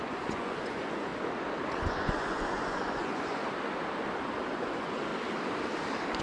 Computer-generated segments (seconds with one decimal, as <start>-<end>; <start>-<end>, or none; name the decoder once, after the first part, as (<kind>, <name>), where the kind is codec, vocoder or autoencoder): 0.0-1.1 (vocoder, Vocos); 1.7-3.4; 4.5-5.1